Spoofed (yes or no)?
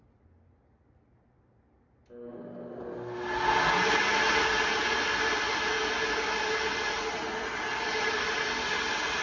no